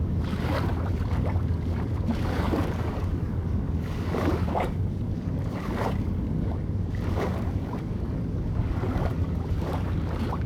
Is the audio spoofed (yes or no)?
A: yes